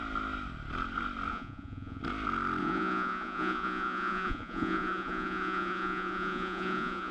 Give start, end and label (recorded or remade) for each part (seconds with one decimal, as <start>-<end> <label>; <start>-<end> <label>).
0.0-1.3 recorded; 1.3-2.0 remade; 2.0-2.6 recorded; 2.6-7.1 remade